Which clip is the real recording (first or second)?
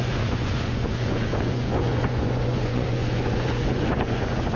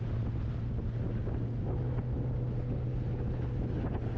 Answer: second